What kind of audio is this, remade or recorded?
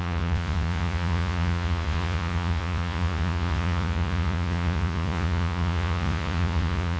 remade